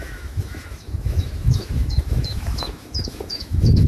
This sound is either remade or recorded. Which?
remade